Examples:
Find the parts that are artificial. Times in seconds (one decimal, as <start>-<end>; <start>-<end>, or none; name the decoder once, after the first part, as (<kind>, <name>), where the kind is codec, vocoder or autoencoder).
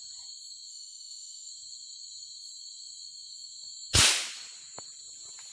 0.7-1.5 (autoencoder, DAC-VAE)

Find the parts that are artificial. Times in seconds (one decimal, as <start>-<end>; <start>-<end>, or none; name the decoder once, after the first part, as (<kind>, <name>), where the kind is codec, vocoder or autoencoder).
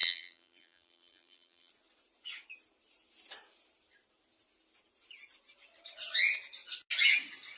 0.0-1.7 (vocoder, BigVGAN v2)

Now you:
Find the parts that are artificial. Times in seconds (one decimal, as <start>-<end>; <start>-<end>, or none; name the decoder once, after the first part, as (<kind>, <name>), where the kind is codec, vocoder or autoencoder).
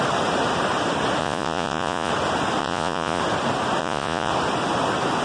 1.2-2.1 (vocoder, Vocos); 2.6-3.2; 3.8-4.3